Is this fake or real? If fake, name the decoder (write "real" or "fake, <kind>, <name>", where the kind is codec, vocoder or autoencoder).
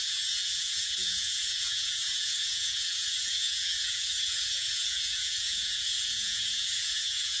fake, vocoder, Vocos